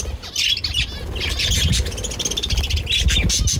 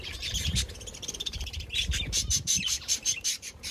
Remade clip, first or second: second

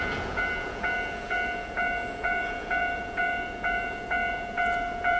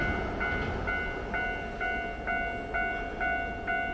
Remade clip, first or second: first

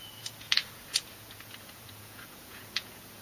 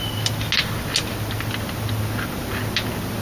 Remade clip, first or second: first